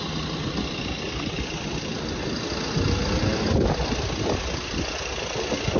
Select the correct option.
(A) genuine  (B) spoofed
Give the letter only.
A